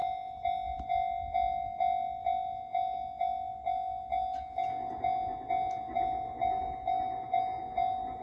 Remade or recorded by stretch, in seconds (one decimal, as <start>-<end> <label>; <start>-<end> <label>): 0.0-8.2 recorded